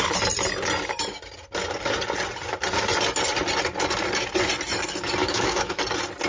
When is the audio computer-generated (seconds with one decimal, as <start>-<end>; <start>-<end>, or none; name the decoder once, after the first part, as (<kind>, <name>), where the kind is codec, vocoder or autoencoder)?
5.2-5.8 (autoencoder, DAC-VAE)